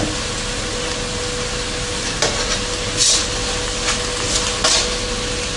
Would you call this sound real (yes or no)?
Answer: yes